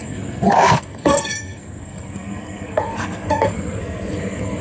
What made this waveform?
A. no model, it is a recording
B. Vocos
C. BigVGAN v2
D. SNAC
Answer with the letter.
D